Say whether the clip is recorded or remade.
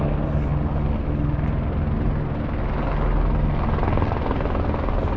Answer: recorded